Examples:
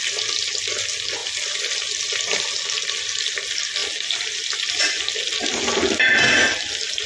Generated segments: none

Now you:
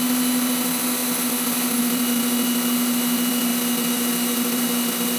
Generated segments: none

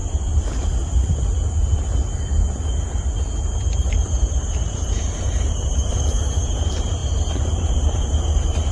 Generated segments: 3.4-8.7 (vocoder, BigVGAN v2)

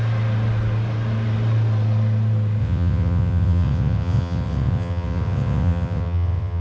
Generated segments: 2.6-6.6 (vocoder, WaveNeXt)

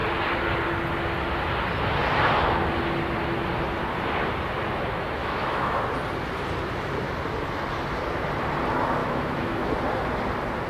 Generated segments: 5.2-5.8 (autoencoder, DAC-VAE); 9.0-9.7

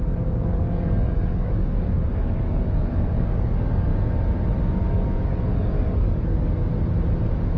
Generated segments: 0.0-3.9 (codec, DAC); 4.8-6.6

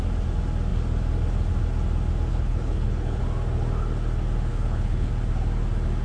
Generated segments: 2.3-3.2 (codec, HILCodec); 4.5-5.1